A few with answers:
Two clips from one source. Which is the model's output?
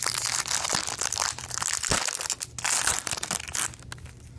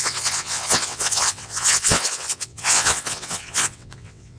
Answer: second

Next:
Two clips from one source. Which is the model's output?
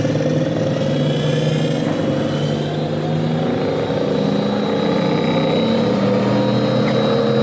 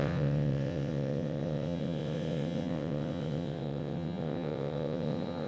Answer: second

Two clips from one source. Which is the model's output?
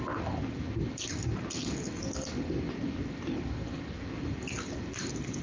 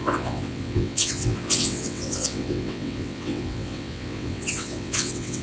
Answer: second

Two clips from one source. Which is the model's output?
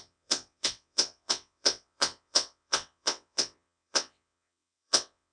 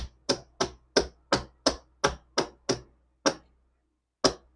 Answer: first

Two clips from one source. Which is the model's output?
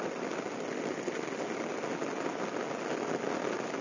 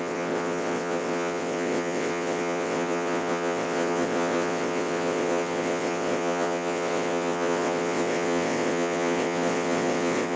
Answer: second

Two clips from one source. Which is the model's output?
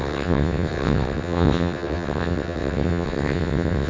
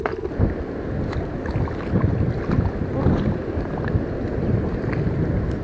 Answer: first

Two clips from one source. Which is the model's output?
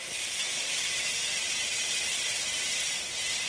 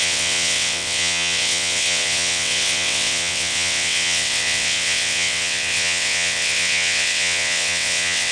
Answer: second